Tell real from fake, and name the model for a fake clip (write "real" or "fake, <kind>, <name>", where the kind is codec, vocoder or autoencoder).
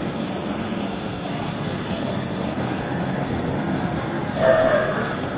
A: fake, codec, SNAC